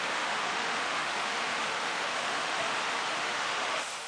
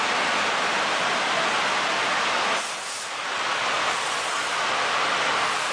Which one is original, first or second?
second